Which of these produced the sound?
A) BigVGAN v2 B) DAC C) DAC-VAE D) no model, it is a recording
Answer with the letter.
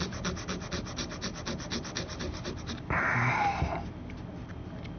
D